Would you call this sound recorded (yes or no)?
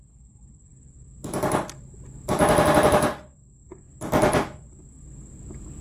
yes